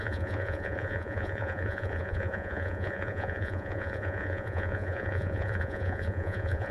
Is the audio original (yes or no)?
no